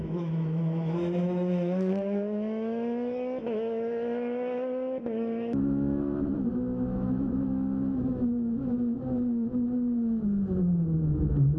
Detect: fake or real fake